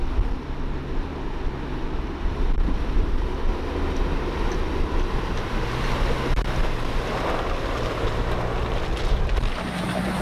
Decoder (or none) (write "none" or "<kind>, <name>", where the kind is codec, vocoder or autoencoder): none